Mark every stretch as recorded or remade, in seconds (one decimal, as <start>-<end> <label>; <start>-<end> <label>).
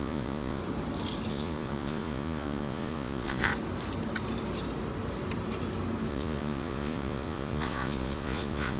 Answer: 0.0-0.6 remade; 0.6-1.3 recorded; 1.3-3.5 remade; 3.5-6.1 recorded; 6.1-8.8 remade